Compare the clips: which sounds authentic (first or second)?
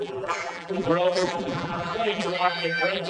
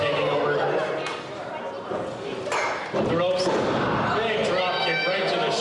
second